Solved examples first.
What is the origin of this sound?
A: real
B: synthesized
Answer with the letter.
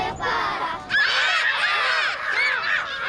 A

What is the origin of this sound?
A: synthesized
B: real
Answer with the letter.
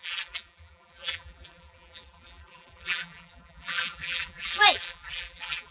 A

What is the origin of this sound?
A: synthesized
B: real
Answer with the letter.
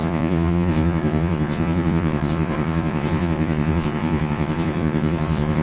A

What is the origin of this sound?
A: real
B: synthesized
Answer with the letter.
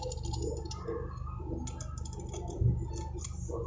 A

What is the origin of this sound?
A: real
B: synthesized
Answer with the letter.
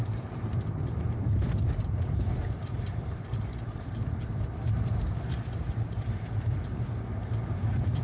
B